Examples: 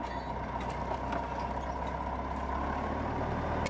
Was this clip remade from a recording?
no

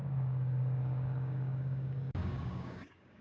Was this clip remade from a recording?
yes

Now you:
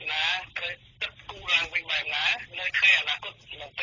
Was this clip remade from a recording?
yes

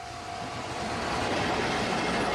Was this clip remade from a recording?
no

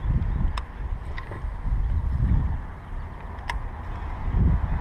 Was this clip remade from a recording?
no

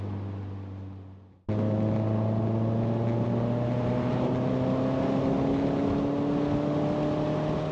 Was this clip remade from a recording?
no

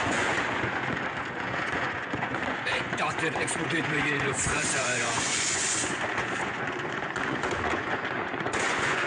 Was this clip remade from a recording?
yes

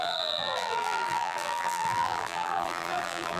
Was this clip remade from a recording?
yes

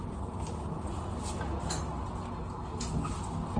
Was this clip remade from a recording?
no